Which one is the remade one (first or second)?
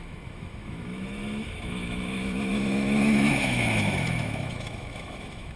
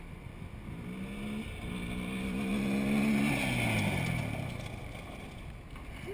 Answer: first